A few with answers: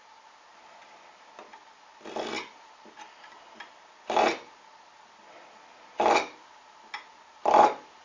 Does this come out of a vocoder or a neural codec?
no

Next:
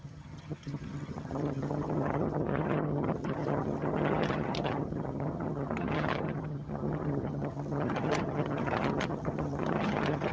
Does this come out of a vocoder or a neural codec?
yes